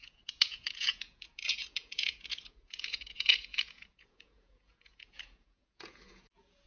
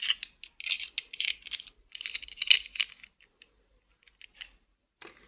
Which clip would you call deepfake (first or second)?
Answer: first